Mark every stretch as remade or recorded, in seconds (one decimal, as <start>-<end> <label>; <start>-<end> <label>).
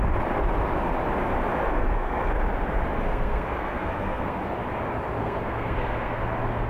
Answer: 0.0-1.7 recorded; 1.7-2.4 remade; 2.4-3.1 recorded; 3.1-4.4 remade; 4.4-5.2 recorded; 5.2-6.2 remade; 6.2-6.7 recorded